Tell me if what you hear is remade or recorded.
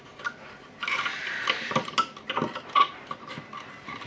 recorded